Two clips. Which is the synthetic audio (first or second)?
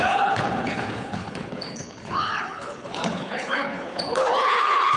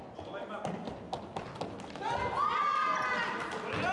first